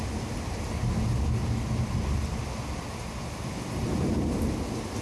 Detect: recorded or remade recorded